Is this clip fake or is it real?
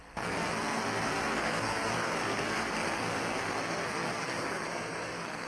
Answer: fake